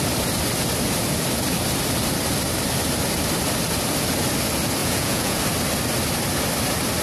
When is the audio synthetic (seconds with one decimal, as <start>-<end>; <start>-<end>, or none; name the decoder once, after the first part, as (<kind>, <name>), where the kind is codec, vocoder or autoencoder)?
4.8-5.4 (vocoder, Vocos)